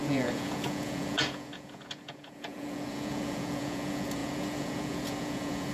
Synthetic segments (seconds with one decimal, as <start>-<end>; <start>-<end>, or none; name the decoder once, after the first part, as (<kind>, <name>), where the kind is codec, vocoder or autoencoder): 0.0-5.7 (vocoder, Vocos)